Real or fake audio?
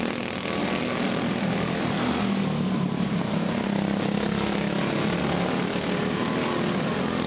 real